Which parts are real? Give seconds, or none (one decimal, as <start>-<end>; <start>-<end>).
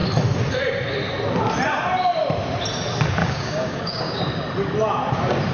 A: 0.0-3.2; 4.2-5.5